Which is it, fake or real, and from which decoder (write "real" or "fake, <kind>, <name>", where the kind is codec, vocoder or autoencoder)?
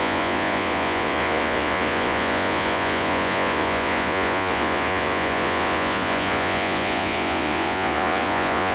fake, vocoder, Vocos